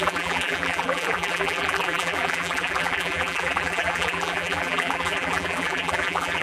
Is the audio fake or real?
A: fake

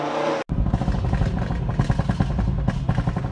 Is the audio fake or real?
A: real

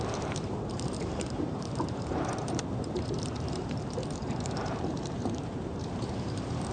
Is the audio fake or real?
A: fake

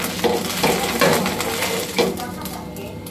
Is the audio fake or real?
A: real